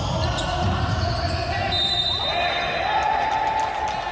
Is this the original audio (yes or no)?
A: yes